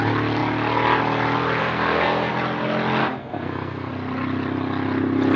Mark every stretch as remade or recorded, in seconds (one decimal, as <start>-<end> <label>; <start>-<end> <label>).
0.0-1.6 recorded; 1.6-2.3 remade; 2.3-3.0 recorded; 3.0-3.9 remade; 3.9-5.4 recorded